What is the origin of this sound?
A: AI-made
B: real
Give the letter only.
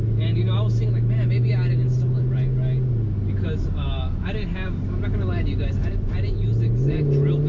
B